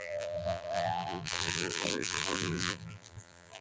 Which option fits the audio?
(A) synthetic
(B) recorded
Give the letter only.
A